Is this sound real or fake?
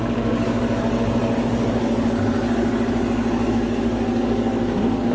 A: fake